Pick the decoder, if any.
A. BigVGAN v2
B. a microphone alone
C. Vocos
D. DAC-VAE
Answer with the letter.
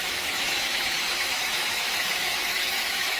D